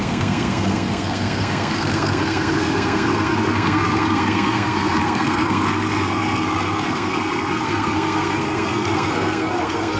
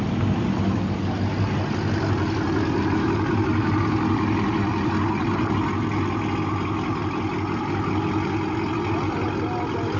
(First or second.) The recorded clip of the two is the second